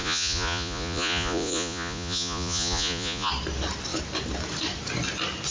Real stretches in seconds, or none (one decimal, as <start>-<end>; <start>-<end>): 3.3-5.5